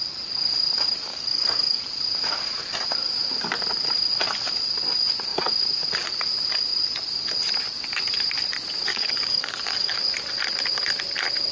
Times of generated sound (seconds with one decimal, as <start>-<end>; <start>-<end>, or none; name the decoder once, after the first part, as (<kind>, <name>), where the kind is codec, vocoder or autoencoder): 1.1-1.8 (codec, DAC); 8.9-10.1